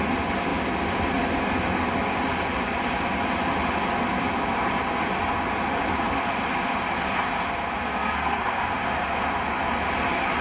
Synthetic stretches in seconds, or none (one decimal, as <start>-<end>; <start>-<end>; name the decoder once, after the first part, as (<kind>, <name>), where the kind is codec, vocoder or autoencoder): 7.8-8.6 (codec, SNAC)